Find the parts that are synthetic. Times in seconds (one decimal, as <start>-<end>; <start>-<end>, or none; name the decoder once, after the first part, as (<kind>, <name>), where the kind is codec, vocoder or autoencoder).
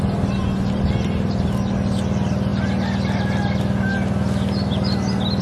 none